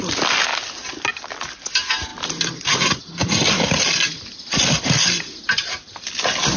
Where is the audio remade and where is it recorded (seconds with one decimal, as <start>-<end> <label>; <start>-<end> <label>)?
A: 0.0-6.6 recorded